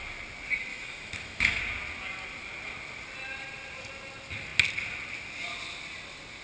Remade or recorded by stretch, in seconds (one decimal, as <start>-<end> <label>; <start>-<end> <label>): 0.0-0.7 recorded; 0.7-1.6 remade; 1.6-6.4 recorded